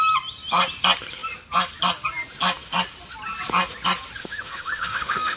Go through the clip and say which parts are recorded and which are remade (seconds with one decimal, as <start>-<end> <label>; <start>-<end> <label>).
0.0-4.2 recorded; 4.2-5.4 remade